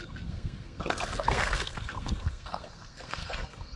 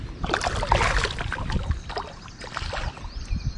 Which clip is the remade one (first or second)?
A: first